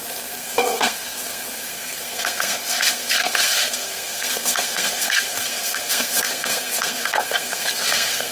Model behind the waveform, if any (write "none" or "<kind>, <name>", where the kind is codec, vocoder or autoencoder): codec, SNAC